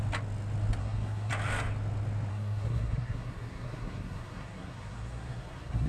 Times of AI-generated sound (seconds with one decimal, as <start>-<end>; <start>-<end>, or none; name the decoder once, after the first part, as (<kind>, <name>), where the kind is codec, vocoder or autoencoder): 0.8-1.3 (codec, SNAC); 2.3-5.9